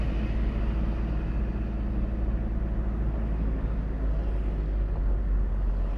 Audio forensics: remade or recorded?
recorded